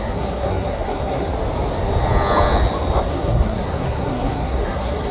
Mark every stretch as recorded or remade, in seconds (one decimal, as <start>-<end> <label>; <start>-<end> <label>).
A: 0.0-1.3 remade; 1.3-3.1 recorded; 3.1-5.1 remade